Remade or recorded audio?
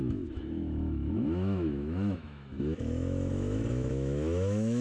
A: remade